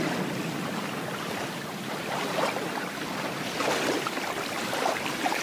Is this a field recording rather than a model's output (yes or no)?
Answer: yes